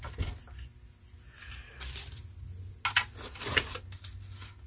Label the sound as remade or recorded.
recorded